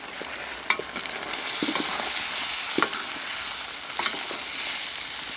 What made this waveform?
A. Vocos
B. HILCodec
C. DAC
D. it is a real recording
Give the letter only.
D